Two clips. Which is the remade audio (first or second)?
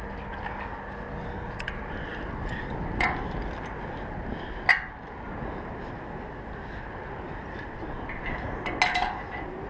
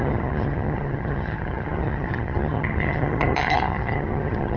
second